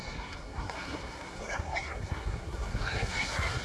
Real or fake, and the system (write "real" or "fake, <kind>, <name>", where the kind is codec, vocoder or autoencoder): fake, codec, SNAC